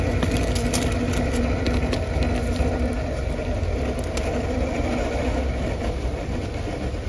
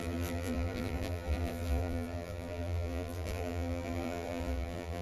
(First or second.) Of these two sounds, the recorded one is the first